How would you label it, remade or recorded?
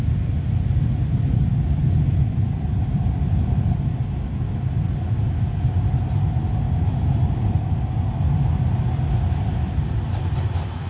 recorded